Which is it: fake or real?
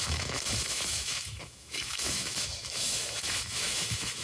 fake